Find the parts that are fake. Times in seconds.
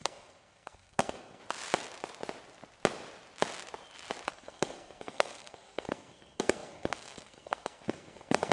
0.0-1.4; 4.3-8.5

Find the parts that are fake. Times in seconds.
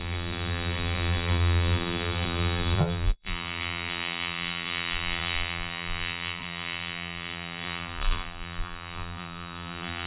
0.0-10.1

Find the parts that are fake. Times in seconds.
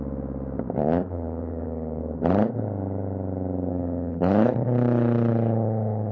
0.8-2.0; 3.7-6.1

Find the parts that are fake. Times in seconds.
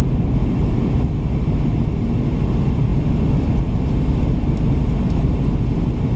0.4-0.9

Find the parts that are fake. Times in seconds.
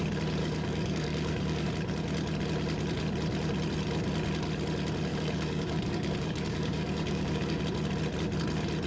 0.4-1.7; 5.1-7.6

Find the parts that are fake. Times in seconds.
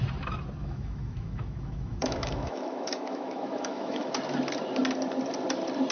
0.6-4.1